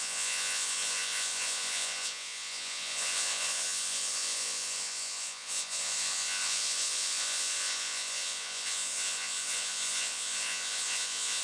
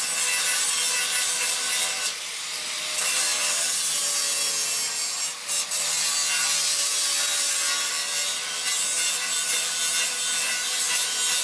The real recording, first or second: second